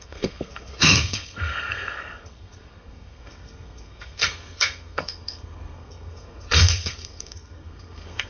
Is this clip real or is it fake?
fake